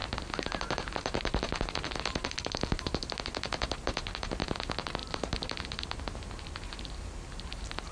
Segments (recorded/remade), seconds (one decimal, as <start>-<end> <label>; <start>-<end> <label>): 0.0-7.9 remade